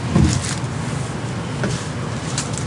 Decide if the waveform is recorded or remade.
recorded